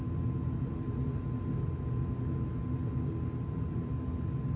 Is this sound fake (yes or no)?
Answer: no